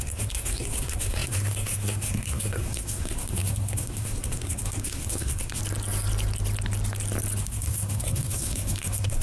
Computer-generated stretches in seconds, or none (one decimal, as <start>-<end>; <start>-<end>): 0.0-5.6; 7.4-9.2